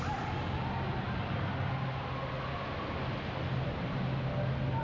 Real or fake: real